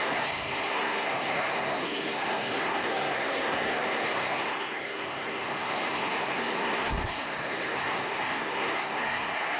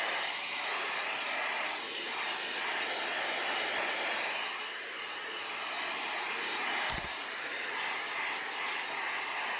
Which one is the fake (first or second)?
first